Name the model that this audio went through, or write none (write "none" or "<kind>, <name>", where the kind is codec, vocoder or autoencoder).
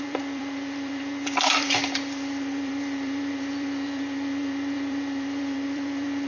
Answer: vocoder, BigVGAN v2